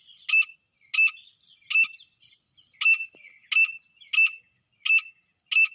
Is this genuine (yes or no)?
yes